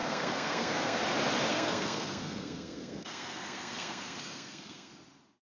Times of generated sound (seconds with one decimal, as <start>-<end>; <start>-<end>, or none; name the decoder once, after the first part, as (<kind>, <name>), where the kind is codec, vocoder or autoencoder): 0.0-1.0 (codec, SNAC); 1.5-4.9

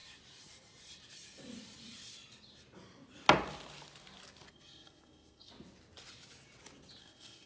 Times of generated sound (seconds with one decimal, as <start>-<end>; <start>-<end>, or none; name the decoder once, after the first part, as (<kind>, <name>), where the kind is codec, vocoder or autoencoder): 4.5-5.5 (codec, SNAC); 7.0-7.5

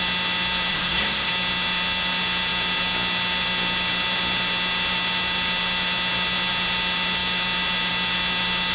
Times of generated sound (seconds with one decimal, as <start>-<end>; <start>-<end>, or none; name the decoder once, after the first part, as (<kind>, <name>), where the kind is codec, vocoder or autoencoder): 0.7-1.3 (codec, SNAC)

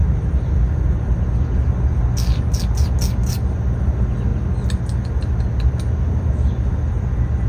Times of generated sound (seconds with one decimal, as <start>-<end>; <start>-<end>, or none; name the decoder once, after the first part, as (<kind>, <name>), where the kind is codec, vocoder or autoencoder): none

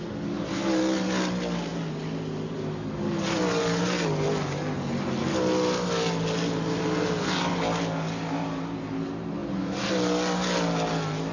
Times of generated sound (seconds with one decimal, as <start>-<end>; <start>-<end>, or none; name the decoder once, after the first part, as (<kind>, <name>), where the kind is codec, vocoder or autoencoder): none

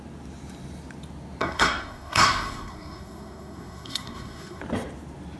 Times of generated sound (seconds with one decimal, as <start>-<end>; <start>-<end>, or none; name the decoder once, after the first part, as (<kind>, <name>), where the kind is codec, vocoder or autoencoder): 1.4-4.6 (codec, SNAC)

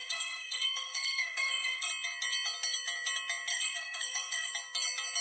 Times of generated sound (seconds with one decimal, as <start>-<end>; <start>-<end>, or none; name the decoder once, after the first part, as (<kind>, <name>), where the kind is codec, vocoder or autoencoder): 0.0-1.9 (codec, SNAC); 3.5-4.5